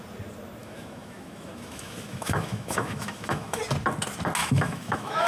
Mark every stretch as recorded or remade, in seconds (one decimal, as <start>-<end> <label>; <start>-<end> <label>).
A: 0.0-0.6 recorded; 0.6-3.6 remade; 3.6-4.4 recorded; 4.4-5.3 remade